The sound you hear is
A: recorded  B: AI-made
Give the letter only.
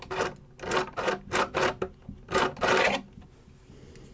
A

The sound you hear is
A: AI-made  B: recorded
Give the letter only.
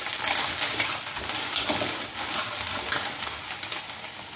B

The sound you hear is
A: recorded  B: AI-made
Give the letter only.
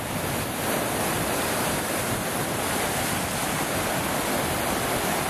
A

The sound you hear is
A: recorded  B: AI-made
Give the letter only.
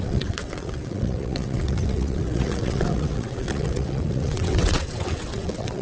B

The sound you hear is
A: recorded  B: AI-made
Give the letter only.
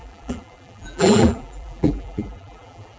B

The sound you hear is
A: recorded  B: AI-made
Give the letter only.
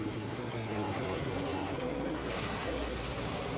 B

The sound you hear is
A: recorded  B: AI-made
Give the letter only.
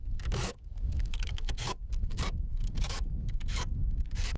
B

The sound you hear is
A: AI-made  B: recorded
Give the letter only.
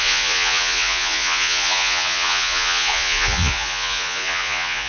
A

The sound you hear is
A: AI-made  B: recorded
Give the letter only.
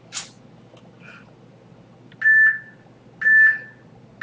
B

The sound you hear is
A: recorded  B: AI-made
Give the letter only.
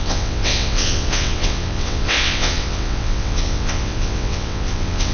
B